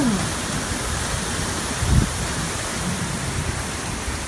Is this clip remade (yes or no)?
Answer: no